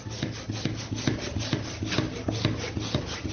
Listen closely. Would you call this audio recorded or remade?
recorded